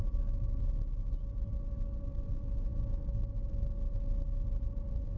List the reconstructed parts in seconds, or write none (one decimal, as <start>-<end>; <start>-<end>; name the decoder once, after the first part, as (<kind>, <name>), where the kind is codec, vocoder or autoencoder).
none